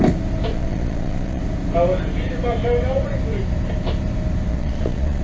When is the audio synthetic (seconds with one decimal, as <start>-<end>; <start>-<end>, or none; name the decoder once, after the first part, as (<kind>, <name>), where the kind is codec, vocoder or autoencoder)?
0.5-1.4 (vocoder, Vocos); 4.5-5.2